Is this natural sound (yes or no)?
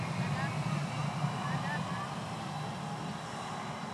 yes